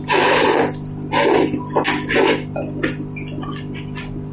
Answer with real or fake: real